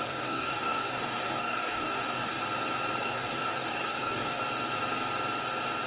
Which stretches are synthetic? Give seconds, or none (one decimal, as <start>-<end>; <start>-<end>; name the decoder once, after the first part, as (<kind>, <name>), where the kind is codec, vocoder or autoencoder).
0.0-2.4 (codec, DAC); 3.0-4.4